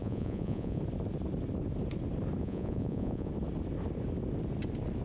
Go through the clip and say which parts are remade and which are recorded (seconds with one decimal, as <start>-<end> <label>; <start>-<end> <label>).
0.0-0.8 remade; 0.8-2.4 recorded; 2.4-3.3 remade; 3.3-5.0 recorded